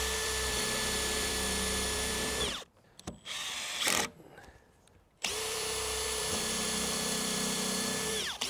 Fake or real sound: fake